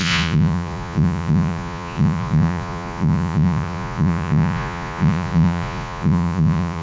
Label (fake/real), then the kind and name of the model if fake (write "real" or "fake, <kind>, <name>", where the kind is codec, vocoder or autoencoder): fake, vocoder, Vocos